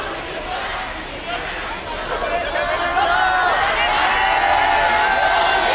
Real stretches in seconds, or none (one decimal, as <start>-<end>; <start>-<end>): 0.0-5.7